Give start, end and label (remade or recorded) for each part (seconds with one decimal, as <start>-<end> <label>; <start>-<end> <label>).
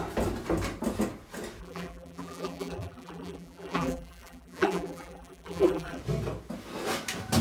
0.0-1.6 recorded; 1.6-6.0 remade; 6.0-7.4 recorded